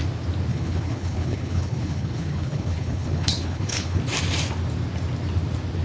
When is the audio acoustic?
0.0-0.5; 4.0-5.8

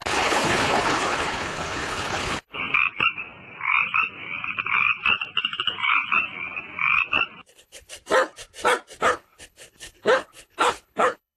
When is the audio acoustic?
2.6-7.5; 7.9-9.0

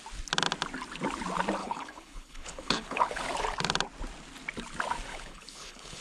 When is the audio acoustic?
0.0-1.6; 3.2-5.1

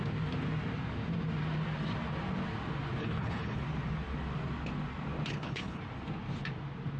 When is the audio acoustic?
0.0-3.0; 3.6-5.3; 5.8-7.0

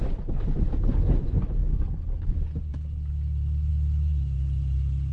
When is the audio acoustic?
0.0-1.7; 2.3-5.1

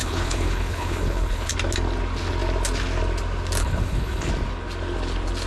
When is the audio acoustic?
1.5-3.6; 4.3-5.5

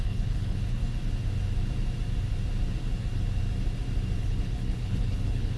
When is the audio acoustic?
0.8-4.2